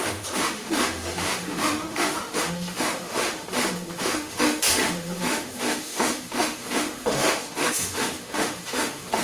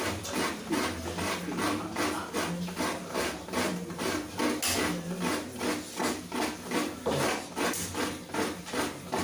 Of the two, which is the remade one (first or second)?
first